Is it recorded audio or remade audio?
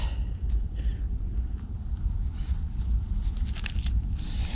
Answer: remade